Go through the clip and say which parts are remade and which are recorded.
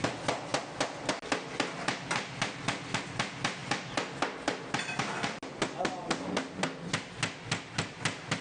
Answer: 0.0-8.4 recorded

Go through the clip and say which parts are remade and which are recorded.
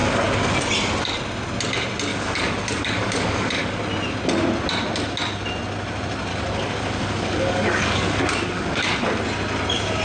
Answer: 0.0-0.6 remade; 0.6-2.1 recorded; 2.1-3.8 remade; 3.8-6.3 recorded; 6.3-9.1 remade; 9.1-10.0 recorded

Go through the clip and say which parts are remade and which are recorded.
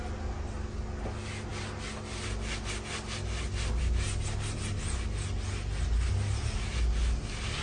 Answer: 0.0-7.6 recorded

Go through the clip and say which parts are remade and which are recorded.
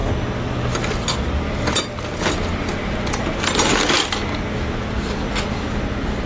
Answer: 0.0-6.3 recorded